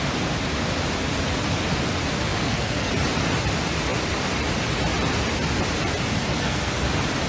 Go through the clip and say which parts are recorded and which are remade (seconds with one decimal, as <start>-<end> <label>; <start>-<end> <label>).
0.0-2.3 recorded; 2.3-2.9 remade; 2.9-6.3 recorded; 6.3-6.8 remade; 6.8-7.3 recorded